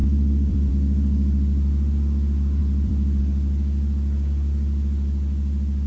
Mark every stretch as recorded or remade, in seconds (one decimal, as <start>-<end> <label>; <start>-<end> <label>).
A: 0.0-0.7 remade; 0.7-2.6 recorded; 2.6-3.2 remade; 3.2-5.9 recorded

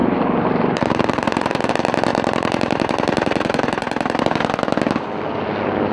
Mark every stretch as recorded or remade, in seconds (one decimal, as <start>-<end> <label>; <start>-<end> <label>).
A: 0.0-1.7 remade; 1.7-2.1 recorded; 2.1-4.2 remade; 4.2-5.9 recorded

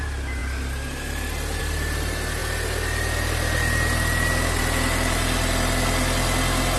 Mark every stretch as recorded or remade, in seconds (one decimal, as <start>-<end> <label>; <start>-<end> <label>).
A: 0.0-6.8 recorded